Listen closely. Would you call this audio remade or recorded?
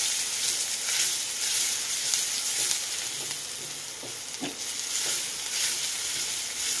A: recorded